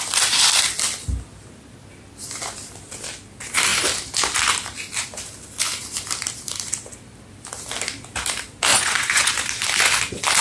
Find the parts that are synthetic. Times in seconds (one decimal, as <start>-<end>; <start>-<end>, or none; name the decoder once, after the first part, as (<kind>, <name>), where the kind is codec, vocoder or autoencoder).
8.7-9.3 (vocoder, Vocos)